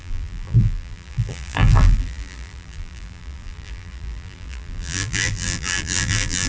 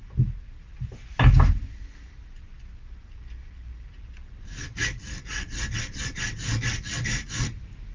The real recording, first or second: second